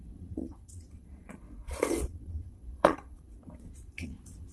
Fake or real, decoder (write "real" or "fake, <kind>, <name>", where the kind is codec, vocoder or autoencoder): fake, vocoder, Vocos